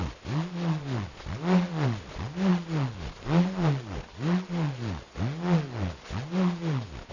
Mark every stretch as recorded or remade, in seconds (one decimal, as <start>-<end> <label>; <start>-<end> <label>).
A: 0.0-7.1 recorded